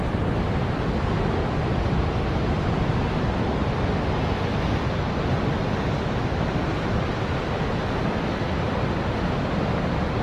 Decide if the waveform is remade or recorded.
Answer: recorded